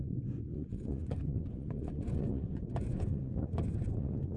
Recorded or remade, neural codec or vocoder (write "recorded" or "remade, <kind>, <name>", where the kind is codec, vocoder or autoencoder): remade, vocoder, Vocos